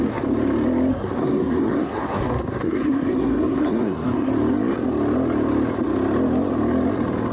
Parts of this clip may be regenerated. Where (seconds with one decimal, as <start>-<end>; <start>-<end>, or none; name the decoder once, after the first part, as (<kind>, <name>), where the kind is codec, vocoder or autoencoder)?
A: 0.9-4.3 (codec, SNAC)